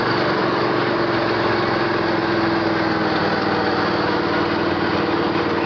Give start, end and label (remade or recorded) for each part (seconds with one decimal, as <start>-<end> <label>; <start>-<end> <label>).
0.0-0.4 recorded; 0.4-0.9 remade; 0.9-5.7 recorded